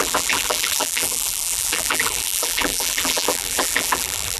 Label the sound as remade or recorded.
remade